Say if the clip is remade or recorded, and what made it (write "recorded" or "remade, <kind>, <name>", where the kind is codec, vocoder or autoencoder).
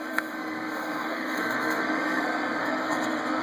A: remade, codec, SNAC